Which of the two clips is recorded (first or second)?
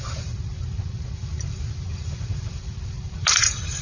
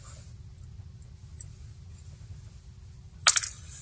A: second